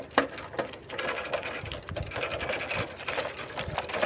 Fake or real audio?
real